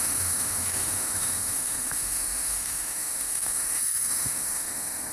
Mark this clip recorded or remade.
remade